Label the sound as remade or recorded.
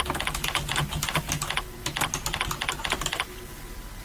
recorded